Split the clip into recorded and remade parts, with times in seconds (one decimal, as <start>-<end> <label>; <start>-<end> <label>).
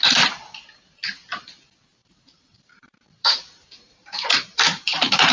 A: 0.0-2.0 recorded; 2.0-5.3 remade